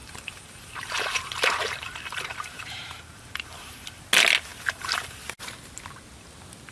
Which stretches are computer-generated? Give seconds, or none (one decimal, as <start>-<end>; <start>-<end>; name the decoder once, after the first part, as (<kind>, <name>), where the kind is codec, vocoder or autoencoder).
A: 0.0-4.0 (vocoder, BigVGAN v2); 4.5-5.2